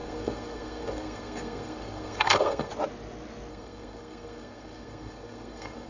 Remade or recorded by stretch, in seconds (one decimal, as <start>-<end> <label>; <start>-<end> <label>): 0.0-2.7 remade; 2.7-3.5 recorded; 3.5-5.9 remade